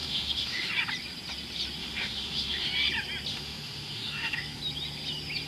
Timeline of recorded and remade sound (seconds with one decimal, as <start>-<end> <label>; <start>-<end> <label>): 0.0-0.7 remade; 0.7-1.8 recorded; 1.8-2.7 remade; 2.7-3.3 recorded; 3.3-4.6 remade; 4.6-5.5 recorded

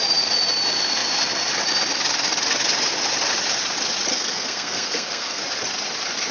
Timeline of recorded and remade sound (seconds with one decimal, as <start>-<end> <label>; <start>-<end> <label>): 0.0-4.1 recorded; 4.1-5.4 remade; 5.4-6.3 recorded

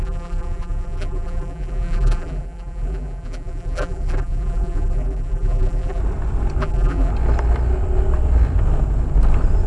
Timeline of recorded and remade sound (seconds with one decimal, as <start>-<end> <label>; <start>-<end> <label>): 0.0-6.0 remade; 6.0-6.6 recorded; 6.6-7.1 remade; 7.1-9.7 recorded

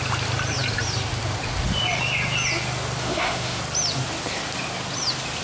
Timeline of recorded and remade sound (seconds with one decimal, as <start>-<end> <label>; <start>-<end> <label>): 0.0-3.0 recorded; 3.0-3.6 remade; 3.6-5.4 recorded

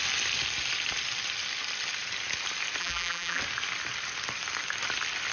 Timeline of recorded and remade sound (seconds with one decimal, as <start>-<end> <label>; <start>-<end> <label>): 0.0-2.8 recorded; 2.8-3.4 remade; 3.4-5.3 recorded